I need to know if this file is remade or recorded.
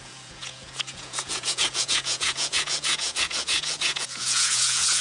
remade